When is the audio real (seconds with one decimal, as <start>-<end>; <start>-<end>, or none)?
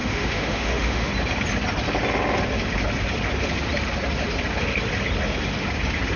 1.1-6.2